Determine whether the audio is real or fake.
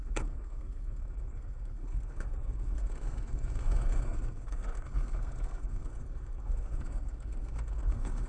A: fake